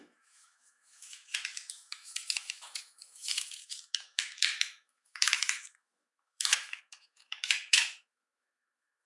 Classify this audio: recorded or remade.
remade